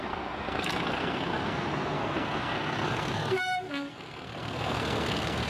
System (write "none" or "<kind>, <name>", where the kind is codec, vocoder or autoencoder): codec, SNAC